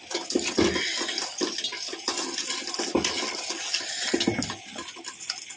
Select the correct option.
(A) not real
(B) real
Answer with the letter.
B